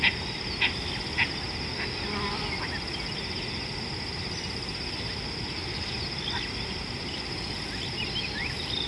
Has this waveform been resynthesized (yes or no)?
no